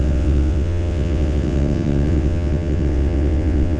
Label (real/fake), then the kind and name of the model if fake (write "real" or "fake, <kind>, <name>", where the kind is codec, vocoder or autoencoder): fake, vocoder, WaveNeXt